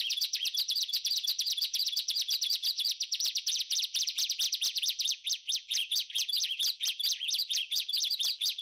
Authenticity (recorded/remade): remade